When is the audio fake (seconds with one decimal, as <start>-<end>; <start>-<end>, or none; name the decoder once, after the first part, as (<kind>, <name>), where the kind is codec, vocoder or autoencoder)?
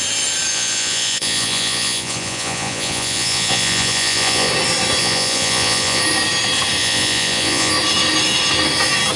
0.5-4.5 (vocoder, Vocos); 5.0-6.0; 6.8-7.7